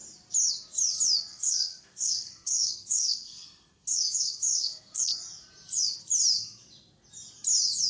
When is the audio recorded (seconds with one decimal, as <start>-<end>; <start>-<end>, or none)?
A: 0.0-1.3; 5.1-7.9